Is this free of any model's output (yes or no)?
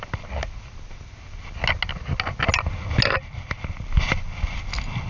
yes